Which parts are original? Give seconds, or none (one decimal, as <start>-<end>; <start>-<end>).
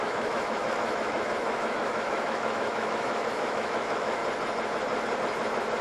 4.2-5.8